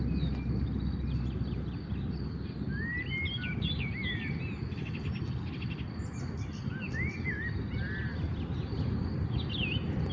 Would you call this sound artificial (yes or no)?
no